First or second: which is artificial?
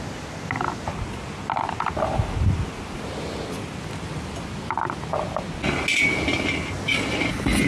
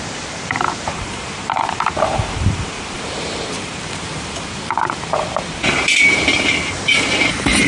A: second